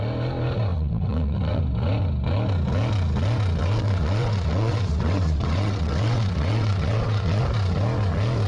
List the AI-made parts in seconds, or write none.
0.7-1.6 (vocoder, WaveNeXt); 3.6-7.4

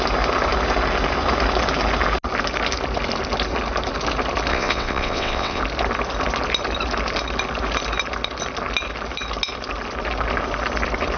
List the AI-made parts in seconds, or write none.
4.5-5.6 (vocoder, WaveNeXt)

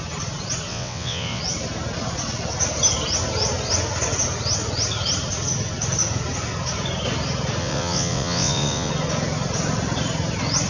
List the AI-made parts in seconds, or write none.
0.7-1.4 (vocoder, WaveNeXt); 7.6-8.9

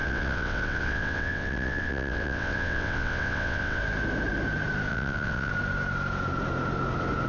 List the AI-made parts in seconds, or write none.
0.0-3.8 (vocoder, WaveNeXt); 4.9-5.5

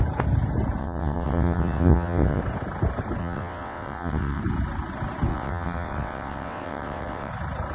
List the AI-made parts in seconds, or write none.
0.8-2.4 (vocoder, WaveNeXt); 3.2-4.4; 5.3-7.3

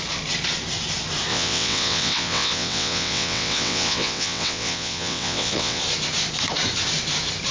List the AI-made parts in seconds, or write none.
1.3-5.8 (vocoder, WaveNeXt)